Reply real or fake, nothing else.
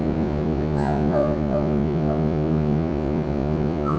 fake